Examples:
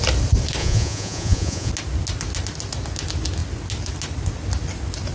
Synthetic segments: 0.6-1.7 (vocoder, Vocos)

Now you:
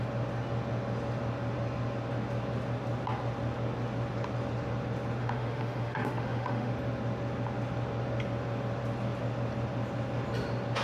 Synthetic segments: 5.2-6.7 (autoencoder, DAC-VAE)